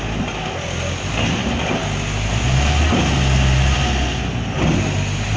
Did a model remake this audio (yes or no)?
no